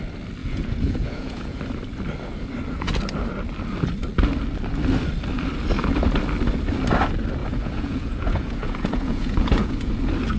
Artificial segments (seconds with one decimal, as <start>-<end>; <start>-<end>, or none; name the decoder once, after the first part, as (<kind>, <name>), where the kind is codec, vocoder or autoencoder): 0.4-1.6 (vocoder, Vocos); 7.4-9.9